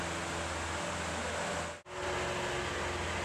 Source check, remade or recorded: recorded